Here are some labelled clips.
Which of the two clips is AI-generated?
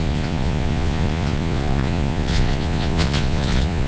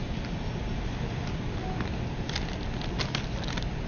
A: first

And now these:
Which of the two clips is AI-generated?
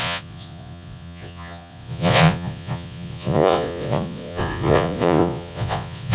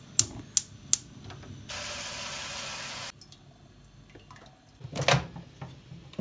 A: first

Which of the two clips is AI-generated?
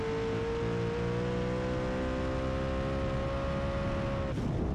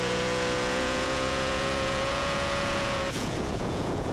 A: second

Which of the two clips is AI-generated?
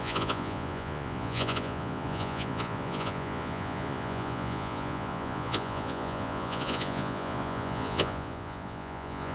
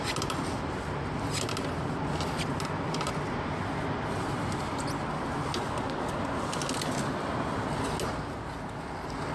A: first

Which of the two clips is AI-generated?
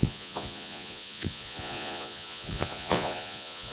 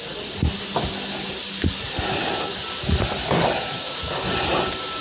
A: first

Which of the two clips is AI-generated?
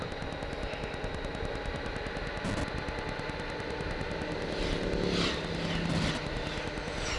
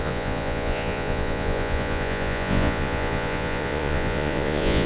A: second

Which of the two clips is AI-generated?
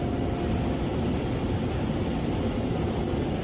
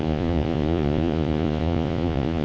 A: second